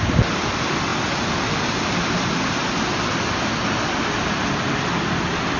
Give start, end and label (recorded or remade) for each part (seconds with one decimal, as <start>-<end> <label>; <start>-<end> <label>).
0.0-5.6 recorded